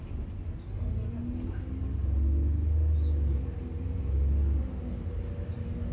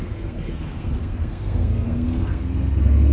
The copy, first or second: second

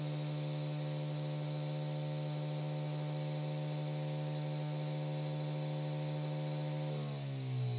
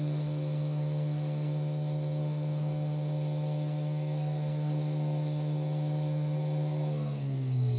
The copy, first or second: second